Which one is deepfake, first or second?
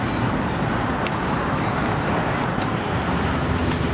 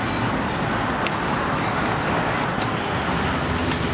first